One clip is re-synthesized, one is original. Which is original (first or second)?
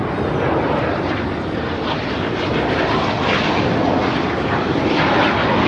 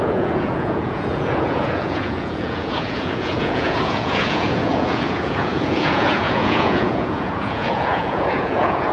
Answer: first